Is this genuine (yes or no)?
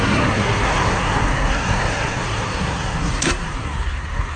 no